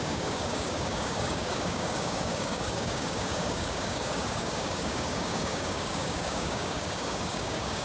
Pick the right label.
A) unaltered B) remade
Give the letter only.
B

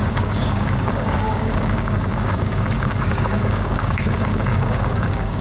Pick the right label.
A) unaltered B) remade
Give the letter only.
B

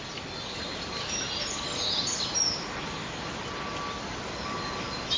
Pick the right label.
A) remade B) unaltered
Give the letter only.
B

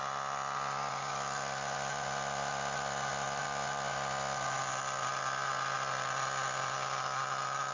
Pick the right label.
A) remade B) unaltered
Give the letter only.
B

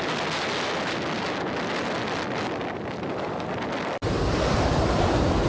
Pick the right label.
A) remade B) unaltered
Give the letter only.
B